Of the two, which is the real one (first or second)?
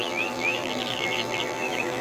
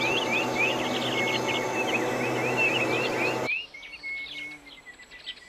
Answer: second